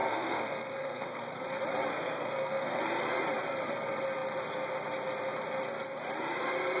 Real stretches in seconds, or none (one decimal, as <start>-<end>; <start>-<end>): 1.4-1.9; 2.8-6.8